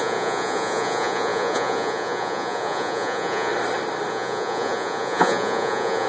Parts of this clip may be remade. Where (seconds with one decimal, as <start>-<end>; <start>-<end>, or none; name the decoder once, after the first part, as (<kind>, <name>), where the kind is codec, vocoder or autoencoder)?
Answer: 0.0-3.5 (vocoder, Vocos); 4.1-6.1